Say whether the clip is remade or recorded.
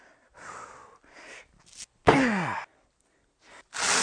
recorded